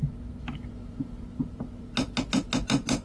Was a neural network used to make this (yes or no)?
no